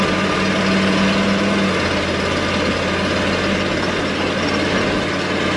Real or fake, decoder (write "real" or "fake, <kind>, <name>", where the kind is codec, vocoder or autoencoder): real